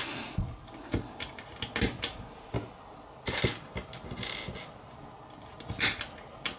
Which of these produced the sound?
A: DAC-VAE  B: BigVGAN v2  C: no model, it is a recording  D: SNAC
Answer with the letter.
C